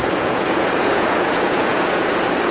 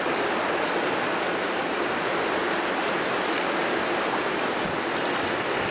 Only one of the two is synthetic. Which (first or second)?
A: first